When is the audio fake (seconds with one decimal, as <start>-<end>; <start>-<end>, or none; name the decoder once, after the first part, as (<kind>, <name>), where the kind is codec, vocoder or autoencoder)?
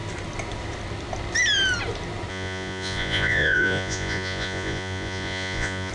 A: 2.3-5.9 (vocoder, Vocos)